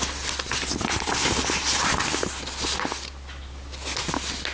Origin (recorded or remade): recorded